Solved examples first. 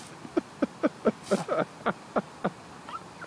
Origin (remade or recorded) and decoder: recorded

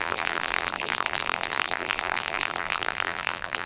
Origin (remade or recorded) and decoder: remade, vocoder, BigVGAN v2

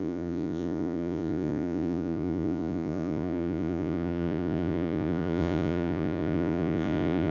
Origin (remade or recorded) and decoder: remade, vocoder, Vocos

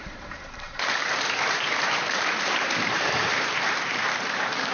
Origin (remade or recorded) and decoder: remade, vocoder, BigVGAN v2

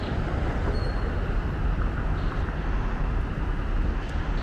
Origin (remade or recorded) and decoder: recorded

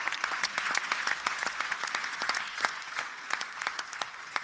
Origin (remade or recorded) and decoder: remade, vocoder, Vocos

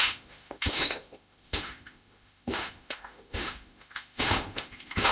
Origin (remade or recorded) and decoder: remade, autoencoder, DAC-VAE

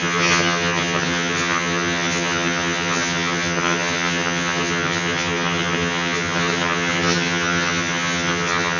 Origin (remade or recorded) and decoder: remade, vocoder, HiFi-GAN